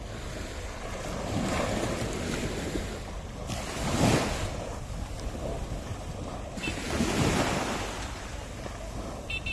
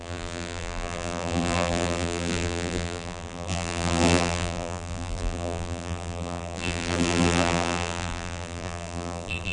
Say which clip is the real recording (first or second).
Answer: first